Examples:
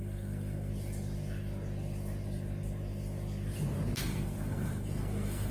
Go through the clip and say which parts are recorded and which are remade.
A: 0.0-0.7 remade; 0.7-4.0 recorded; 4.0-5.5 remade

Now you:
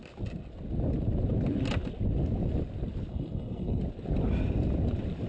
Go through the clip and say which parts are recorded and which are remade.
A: 0.0-3.1 recorded; 3.1-3.8 remade; 3.8-5.3 recorded